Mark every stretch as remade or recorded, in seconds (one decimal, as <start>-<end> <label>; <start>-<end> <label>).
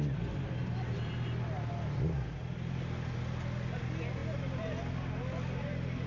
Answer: 0.0-6.1 recorded